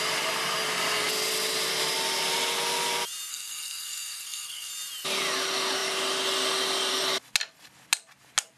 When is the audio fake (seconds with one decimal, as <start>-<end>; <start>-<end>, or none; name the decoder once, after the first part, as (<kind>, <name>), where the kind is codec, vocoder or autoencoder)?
3.3-4.7 (codec, SNAC)